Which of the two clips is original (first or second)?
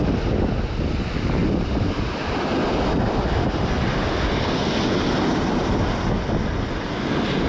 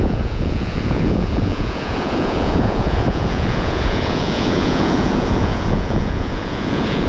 first